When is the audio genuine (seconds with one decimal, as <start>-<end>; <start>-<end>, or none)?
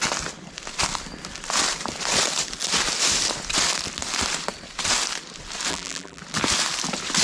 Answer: 0.0-5.7; 6.2-7.2